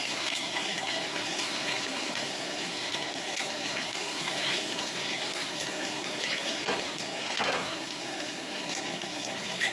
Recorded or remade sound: remade